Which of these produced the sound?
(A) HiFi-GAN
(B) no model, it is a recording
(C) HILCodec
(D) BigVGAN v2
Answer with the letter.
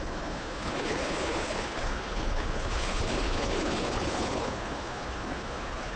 C